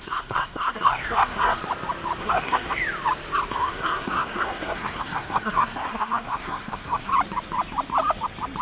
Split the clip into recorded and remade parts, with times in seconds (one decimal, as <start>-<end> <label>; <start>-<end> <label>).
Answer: 0.0-1.6 remade; 1.6-2.2 recorded; 2.2-2.8 remade; 2.8-3.5 recorded; 3.5-7.1 remade; 7.1-8.6 recorded